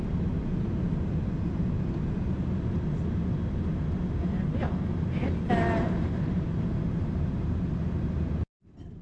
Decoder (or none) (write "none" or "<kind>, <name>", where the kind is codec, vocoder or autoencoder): none